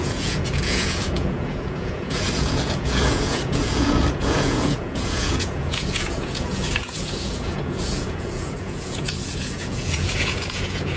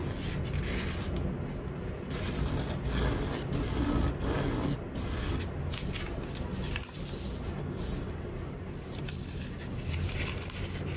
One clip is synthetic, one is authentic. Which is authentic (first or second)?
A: second